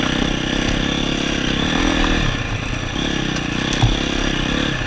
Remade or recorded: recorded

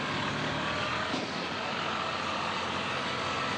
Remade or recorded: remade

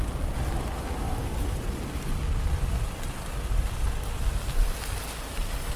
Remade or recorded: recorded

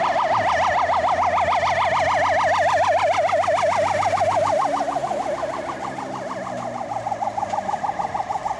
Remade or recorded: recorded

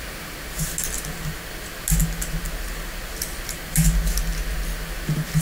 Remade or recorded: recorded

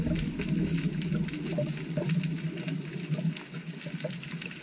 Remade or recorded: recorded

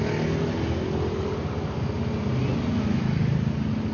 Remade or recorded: recorded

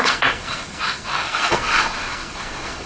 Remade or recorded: remade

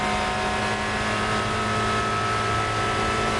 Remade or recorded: recorded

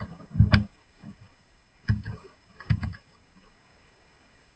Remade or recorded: remade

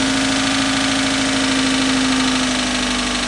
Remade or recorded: recorded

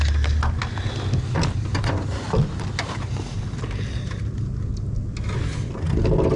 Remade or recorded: recorded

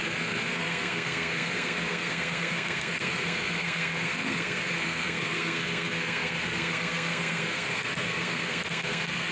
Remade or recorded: remade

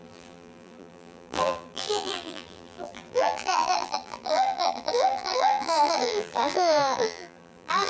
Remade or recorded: remade